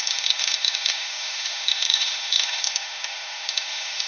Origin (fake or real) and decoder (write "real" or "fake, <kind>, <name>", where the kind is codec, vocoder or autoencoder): fake, autoencoder, DAC-VAE